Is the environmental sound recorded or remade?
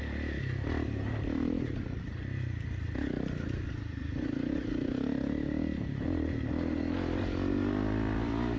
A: recorded